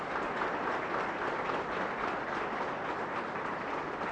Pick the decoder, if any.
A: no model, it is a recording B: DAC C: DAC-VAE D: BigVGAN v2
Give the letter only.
A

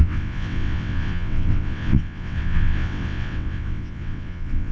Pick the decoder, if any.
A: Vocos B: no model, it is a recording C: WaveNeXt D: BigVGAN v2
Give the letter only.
C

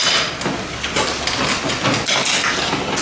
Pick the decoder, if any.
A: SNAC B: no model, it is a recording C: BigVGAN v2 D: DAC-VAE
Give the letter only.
B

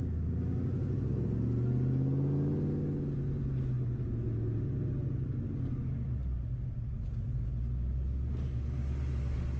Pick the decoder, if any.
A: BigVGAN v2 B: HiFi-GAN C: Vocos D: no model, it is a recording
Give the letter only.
D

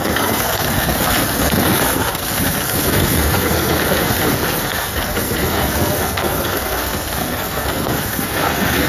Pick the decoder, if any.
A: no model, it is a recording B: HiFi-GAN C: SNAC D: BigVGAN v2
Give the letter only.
C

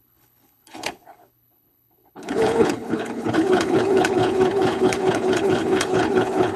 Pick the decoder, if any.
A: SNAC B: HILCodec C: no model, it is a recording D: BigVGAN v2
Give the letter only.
B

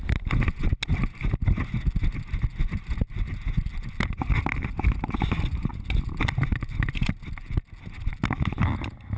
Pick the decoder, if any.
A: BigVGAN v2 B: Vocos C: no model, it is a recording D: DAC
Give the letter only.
C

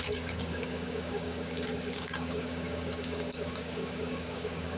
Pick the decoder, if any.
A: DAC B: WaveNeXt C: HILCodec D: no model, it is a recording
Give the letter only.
A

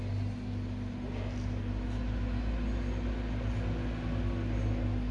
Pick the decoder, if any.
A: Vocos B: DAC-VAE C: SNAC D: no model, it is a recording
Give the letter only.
D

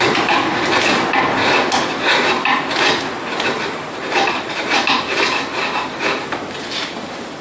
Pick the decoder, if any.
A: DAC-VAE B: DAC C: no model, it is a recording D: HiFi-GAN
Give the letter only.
C